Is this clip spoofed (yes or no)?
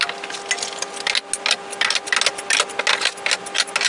no